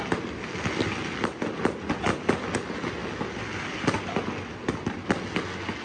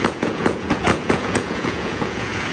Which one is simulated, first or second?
second